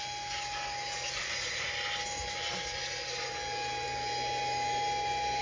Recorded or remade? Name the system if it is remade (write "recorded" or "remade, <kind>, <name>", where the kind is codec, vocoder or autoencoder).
recorded